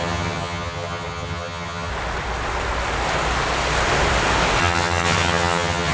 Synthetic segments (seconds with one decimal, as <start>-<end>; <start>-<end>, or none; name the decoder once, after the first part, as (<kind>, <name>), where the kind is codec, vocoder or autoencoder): 0.0-1.9 (vocoder, HiFi-GAN); 4.6-5.9